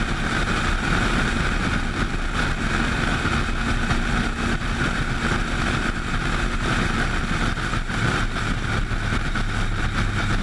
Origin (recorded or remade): recorded